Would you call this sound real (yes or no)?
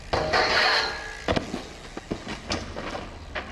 yes